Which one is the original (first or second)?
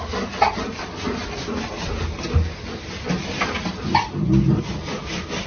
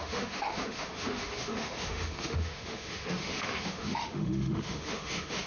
first